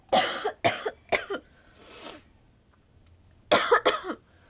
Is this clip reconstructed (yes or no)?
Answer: no